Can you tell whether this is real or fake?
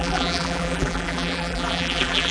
fake